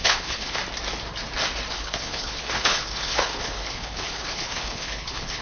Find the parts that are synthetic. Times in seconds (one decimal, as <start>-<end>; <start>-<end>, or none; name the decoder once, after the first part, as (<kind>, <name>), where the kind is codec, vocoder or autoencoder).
0.0-0.6 (codec, HILCodec); 1.7-5.4